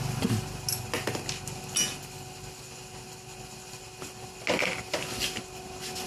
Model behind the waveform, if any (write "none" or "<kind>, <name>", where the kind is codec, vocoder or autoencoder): none